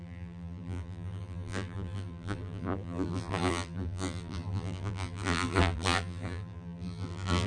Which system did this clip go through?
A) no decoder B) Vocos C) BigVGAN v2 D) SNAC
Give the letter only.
C